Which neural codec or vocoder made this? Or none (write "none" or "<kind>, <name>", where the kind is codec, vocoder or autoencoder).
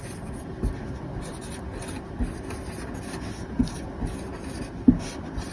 none